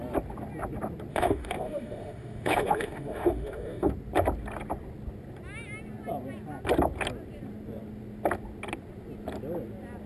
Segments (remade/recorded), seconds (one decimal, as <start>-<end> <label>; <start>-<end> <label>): 0.0-1.1 recorded; 1.1-3.9 remade; 3.9-10.1 recorded